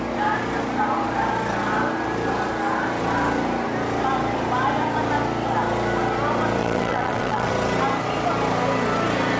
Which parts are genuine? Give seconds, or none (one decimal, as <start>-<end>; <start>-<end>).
0.0-6.6; 7.5-9.4